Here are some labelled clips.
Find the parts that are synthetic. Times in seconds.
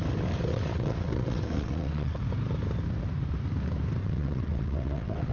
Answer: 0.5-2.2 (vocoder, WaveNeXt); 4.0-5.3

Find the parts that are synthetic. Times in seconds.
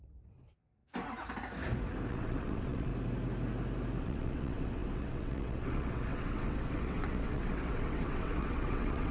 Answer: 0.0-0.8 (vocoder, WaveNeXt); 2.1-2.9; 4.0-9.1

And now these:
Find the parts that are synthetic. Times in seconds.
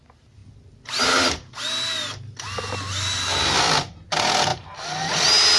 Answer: none